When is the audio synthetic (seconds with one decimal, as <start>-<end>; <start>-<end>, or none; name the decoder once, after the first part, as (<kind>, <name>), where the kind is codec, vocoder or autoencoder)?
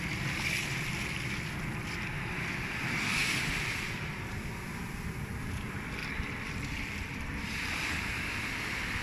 3.2-5.3 (vocoder, BigVGAN v2); 6.0-8.2